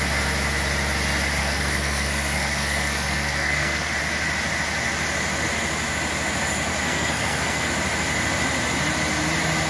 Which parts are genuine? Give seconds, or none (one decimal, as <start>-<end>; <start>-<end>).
0.0-1.4; 3.9-6.7; 7.7-9.7